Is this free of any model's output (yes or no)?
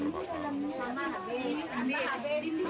yes